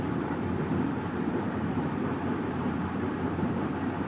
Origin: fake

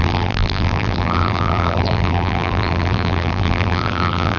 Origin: fake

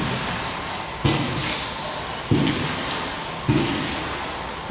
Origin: real